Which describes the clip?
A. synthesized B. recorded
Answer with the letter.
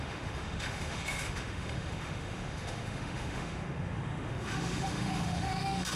A